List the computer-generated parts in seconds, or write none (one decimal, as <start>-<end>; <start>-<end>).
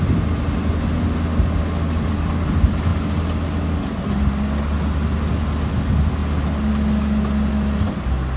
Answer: none